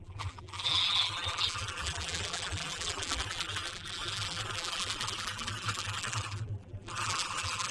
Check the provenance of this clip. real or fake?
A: fake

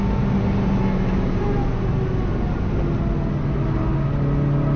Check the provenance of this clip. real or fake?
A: real